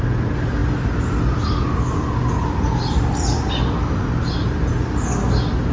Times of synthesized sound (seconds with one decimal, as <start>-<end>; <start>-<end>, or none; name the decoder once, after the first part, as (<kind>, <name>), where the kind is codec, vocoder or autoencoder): none